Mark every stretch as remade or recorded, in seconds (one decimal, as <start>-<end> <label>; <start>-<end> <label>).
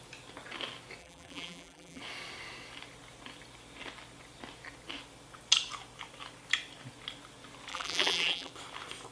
0.0-1.0 recorded; 1.0-2.0 remade; 2.0-7.7 recorded; 7.7-8.5 remade; 8.5-9.1 recorded